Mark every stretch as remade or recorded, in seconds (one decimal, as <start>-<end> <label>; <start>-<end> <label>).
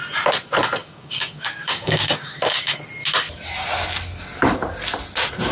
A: 0.0-0.8 recorded; 0.8-2.8 remade; 2.8-5.5 recorded